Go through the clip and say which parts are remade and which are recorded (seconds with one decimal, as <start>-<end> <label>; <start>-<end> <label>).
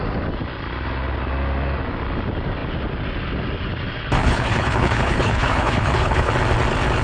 0.0-4.2 recorded; 4.2-6.3 remade; 6.3-7.0 recorded